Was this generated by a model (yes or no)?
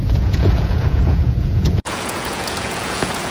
yes